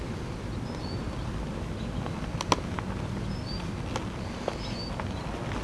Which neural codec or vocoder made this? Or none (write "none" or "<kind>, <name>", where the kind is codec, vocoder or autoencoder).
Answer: none